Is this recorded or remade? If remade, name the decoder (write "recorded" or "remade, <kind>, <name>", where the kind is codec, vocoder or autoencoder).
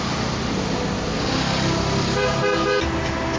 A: recorded